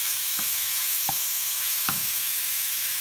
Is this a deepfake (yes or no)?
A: yes